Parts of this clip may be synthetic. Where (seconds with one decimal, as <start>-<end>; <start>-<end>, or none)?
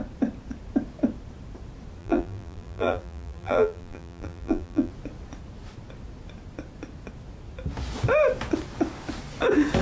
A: 2.0-4.9